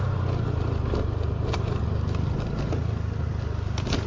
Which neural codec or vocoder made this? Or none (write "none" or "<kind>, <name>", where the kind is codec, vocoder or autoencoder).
none